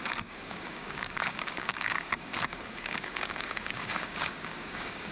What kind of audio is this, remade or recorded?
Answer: remade